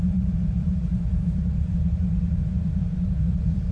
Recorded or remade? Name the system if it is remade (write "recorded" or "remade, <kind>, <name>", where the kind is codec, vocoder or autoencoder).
remade, vocoder, BigVGAN v2